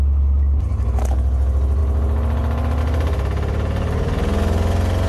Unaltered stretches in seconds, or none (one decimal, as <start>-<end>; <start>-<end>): 0.0-5.1